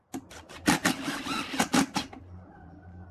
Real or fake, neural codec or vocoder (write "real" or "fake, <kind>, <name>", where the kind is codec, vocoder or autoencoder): real